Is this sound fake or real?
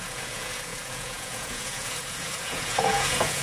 fake